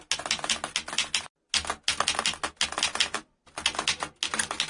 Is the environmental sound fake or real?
real